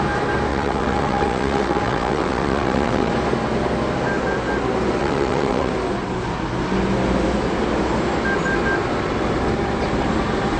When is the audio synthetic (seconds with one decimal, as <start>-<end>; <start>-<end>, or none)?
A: 0.5-3.1; 5.0-5.7